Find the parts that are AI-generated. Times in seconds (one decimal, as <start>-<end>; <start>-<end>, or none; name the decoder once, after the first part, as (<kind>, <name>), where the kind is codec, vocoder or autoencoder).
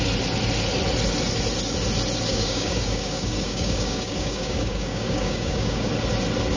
2.3-5.9 (codec, DAC)